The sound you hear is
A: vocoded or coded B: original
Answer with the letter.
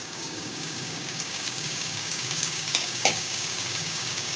A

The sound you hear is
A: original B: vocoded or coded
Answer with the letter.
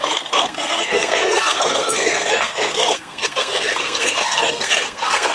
B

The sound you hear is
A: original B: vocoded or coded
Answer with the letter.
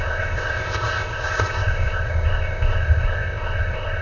B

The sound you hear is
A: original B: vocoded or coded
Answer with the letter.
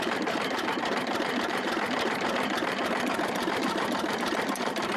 B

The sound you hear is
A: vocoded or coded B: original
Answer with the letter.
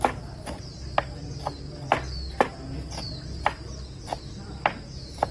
B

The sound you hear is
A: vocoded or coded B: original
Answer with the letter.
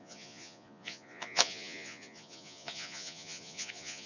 A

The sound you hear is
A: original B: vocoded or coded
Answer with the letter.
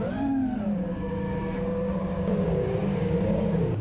B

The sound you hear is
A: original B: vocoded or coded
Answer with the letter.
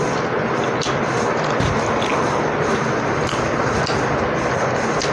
A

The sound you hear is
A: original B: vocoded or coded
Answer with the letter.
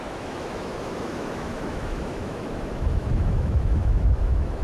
B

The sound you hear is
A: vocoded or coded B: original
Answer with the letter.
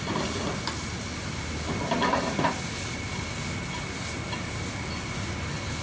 B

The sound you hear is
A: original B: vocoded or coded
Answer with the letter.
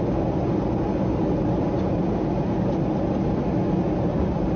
A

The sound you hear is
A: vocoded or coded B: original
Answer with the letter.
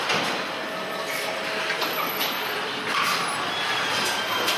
A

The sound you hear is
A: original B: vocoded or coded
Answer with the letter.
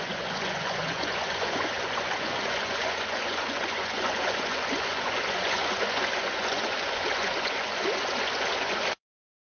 B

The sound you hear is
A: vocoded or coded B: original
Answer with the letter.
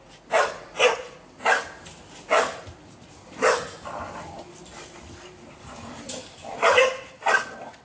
B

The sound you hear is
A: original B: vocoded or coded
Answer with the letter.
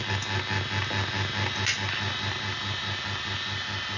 A